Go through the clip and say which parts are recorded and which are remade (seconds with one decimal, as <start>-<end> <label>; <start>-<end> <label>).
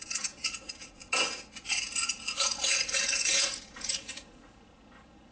0.0-5.3 remade